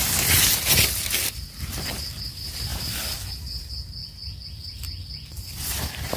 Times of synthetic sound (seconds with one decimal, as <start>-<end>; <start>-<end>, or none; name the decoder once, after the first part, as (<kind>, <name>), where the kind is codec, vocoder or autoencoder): 2.7-3.3 (vocoder, BigVGAN v2); 4.0-6.2